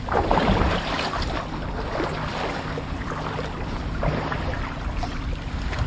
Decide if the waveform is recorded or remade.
recorded